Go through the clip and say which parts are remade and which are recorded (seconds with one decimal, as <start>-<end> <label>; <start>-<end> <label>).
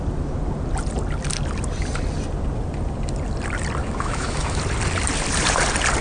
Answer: 0.0-3.8 recorded; 3.8-4.6 remade; 4.6-6.0 recorded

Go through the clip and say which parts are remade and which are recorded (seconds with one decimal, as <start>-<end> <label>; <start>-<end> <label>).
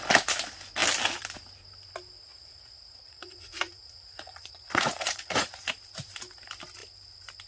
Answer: 0.0-2.3 recorded; 2.3-5.7 remade; 5.7-7.5 recorded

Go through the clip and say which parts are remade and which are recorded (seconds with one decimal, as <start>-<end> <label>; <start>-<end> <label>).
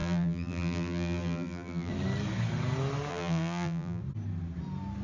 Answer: 0.0-1.9 remade; 1.9-3.1 recorded; 3.1-4.0 remade; 4.0-5.0 recorded